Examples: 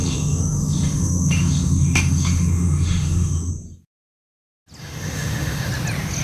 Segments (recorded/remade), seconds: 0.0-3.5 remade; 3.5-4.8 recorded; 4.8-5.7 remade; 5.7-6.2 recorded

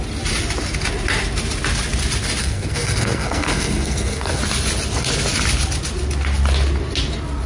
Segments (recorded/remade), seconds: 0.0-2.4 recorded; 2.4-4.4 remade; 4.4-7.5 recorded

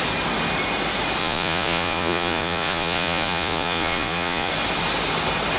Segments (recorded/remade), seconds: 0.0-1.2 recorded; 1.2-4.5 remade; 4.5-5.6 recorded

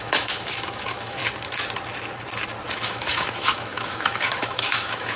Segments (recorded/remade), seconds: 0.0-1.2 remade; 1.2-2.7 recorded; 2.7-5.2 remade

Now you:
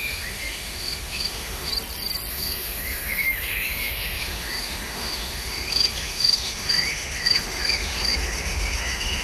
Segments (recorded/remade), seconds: 0.0-1.7 remade; 1.7-2.3 recorded; 2.3-9.2 remade

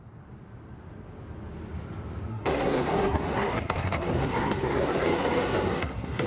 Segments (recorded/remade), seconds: 0.0-2.3 recorded; 2.3-6.3 remade

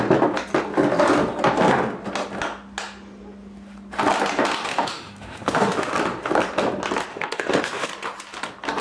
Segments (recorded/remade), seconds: 0.0-4.7 recorded; 4.7-5.9 remade; 5.9-7.1 recorded; 7.1-7.9 remade; 7.9-8.8 recorded